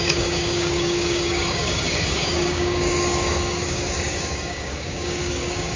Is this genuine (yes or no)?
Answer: no